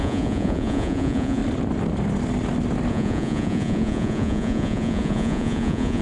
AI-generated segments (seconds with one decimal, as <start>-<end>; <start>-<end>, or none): 0.0-1.4; 2.9-6.0